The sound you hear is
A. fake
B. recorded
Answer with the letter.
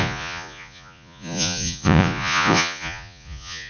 A